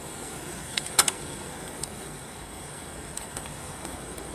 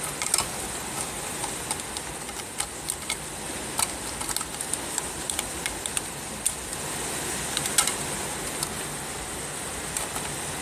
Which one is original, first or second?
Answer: second